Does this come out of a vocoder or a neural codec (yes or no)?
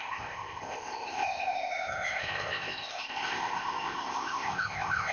yes